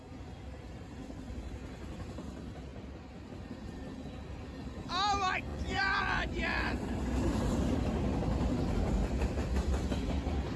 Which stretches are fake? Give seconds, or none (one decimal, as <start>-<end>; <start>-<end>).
5.5-6.0